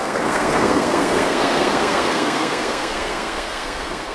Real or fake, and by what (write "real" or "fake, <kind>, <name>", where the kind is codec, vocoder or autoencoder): fake, codec, SNAC